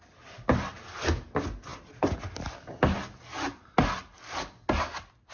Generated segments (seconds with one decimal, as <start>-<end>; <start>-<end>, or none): none